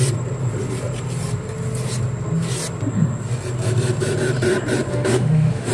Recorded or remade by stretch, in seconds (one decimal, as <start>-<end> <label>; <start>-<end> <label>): 0.0-4.9 recorded; 4.9-5.7 remade